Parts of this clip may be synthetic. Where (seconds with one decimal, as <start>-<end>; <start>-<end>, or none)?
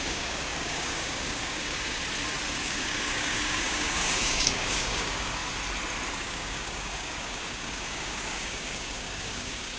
0.0-2.0; 2.6-5.4; 6.1-9.8